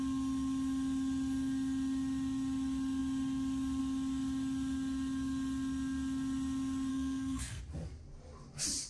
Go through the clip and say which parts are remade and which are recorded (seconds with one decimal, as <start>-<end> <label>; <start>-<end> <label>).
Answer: 0.0-6.9 recorded; 6.9-7.6 remade; 7.6-8.9 recorded